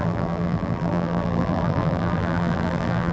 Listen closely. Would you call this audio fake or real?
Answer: fake